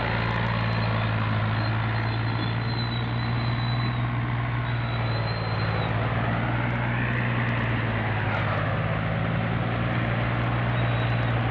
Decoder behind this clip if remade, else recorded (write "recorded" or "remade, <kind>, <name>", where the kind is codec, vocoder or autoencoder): recorded